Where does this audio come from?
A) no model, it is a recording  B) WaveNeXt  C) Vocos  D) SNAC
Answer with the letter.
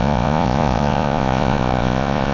C